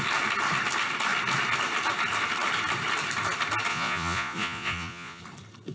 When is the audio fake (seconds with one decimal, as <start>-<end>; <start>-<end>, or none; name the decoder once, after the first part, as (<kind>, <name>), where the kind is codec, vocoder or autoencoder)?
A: 3.7-5.2 (vocoder, Vocos)